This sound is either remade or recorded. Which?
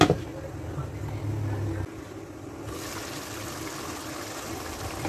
recorded